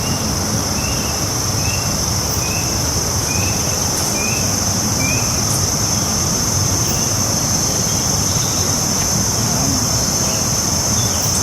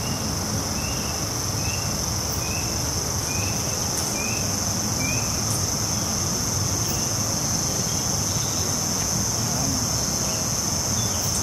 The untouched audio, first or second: second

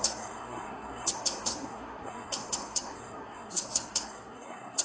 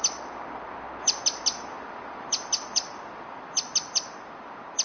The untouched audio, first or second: second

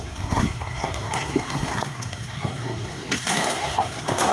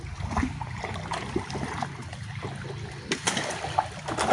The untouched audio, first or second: second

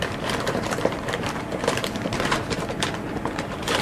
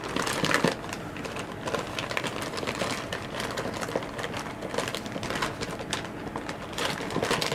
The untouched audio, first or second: second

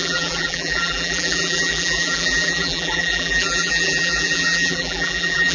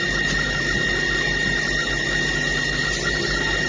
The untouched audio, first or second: second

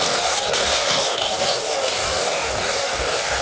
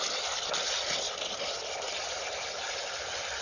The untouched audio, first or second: second